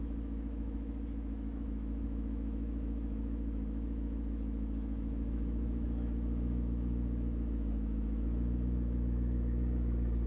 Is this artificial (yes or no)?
yes